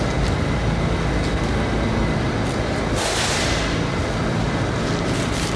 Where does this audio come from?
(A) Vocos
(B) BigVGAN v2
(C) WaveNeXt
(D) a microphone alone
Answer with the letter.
D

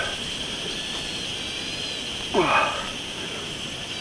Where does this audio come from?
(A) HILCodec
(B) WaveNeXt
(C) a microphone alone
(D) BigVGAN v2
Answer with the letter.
C